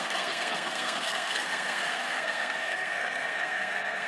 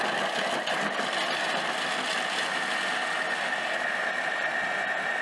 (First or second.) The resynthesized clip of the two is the first